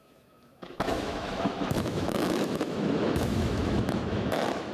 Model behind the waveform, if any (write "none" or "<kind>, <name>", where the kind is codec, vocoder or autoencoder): autoencoder, DAC-VAE